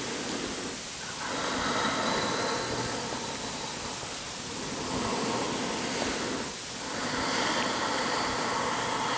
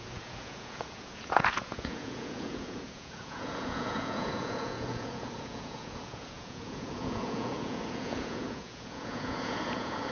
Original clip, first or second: first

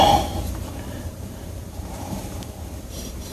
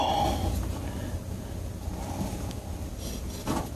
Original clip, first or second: second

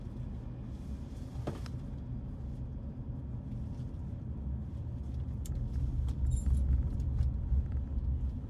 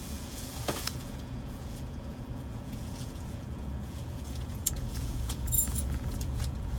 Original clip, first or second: first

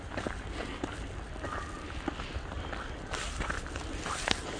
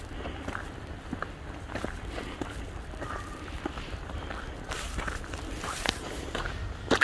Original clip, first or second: first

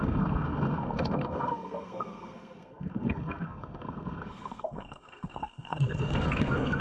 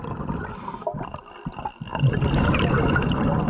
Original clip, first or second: second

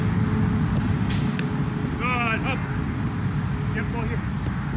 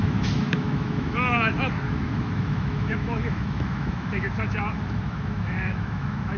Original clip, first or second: first